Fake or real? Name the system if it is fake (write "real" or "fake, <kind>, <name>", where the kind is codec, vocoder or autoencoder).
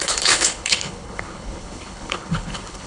fake, codec, HILCodec